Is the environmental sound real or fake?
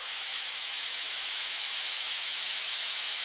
fake